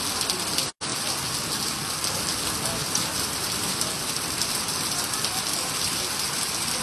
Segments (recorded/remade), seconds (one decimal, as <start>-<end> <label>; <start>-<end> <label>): 0.0-2.8 recorded; 2.8-5.2 remade; 5.2-6.8 recorded